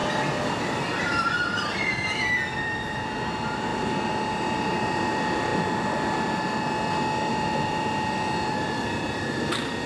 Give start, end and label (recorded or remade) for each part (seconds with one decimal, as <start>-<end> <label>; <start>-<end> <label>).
0.0-0.8 recorded; 0.8-5.5 remade; 5.5-7.3 recorded; 7.3-9.9 remade